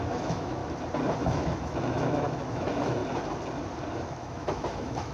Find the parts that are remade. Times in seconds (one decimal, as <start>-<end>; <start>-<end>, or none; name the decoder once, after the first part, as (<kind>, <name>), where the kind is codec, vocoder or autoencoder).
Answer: 0.0-0.6 (autoencoder, DAC-VAE); 1.2-3.0; 3.9-5.1

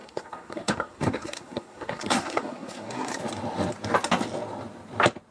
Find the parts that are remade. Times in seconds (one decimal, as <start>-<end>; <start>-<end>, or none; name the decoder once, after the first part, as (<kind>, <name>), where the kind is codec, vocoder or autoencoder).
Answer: 0.0-3.2 (codec, SNAC)

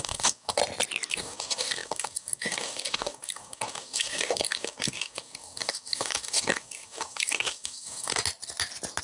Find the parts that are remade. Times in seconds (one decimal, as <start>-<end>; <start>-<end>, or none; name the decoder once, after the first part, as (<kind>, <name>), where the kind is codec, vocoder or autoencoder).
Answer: 0.0-0.6 (codec, DAC); 1.1-8.2

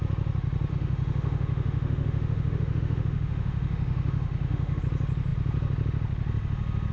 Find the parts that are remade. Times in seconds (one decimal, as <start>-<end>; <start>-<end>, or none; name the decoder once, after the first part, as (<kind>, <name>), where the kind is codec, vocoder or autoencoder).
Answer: 0.7-4.8 (autoencoder, DAC-VAE)

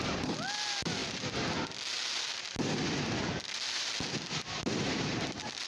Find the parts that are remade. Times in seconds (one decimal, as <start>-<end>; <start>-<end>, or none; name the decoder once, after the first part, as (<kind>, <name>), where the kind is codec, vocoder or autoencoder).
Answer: none

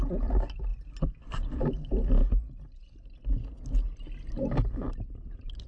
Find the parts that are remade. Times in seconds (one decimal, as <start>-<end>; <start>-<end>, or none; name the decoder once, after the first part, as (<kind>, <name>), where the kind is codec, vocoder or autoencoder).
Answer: 0.7-1.6 (vocoder, BigVGAN v2)

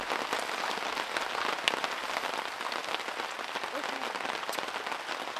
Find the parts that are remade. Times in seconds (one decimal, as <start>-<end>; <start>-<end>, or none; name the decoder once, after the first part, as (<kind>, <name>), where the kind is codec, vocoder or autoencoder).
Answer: none

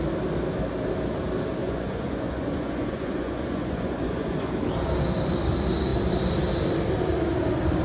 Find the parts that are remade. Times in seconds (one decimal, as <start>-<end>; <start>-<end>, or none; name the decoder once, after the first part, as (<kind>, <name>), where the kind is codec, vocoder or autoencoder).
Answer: 1.6-4.5 (vocoder, Vocos)